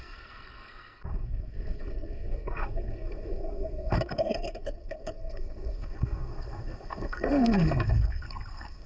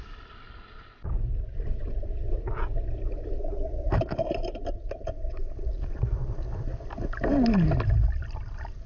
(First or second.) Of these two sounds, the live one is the second